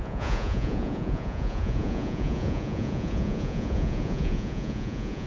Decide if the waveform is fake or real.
fake